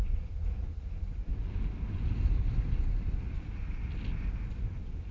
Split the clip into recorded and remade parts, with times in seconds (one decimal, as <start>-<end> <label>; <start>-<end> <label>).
0.0-5.1 recorded